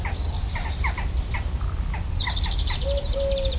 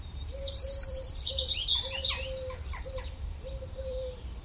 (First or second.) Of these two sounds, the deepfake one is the second